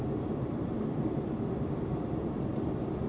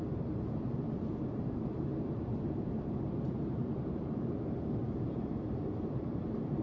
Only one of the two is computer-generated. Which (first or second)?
second